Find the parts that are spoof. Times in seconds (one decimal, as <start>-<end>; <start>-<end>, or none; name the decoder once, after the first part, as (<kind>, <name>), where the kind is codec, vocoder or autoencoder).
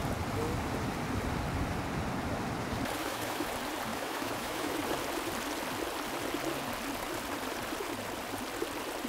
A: 3.0-3.5 (autoencoder, DAC-VAE); 3.9-4.8